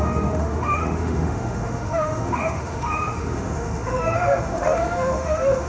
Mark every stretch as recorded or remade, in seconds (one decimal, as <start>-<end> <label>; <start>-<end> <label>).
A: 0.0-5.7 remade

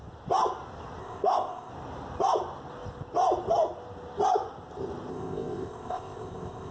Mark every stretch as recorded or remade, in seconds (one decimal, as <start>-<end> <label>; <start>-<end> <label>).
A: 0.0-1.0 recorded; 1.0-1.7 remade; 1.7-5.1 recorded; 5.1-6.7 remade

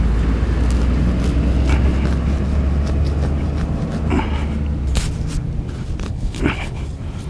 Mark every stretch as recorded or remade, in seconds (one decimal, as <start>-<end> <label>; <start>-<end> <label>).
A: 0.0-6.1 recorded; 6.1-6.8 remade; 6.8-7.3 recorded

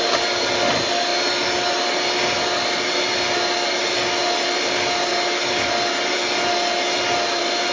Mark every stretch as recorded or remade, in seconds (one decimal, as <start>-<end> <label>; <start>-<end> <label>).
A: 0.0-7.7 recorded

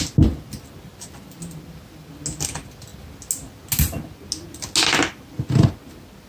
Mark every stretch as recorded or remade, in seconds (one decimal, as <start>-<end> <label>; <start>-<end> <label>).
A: 0.0-6.3 recorded

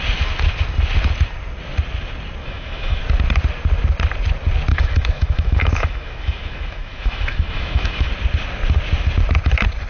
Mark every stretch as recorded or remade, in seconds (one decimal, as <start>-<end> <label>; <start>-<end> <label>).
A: 0.0-2.4 recorded; 2.4-3.0 remade; 3.0-4.7 recorded; 4.7-8.1 remade; 8.1-9.9 recorded

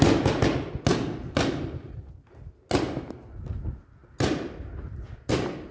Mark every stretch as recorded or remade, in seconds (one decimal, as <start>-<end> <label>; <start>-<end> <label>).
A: 0.0-5.7 recorded

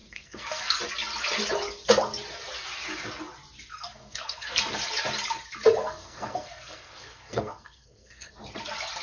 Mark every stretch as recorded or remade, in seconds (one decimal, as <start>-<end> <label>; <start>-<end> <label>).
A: 0.0-0.8 remade; 0.8-3.7 recorded; 3.7-4.6 remade; 4.6-5.8 recorded; 5.8-8.3 remade; 8.3-9.0 recorded